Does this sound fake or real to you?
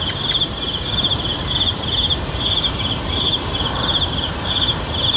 fake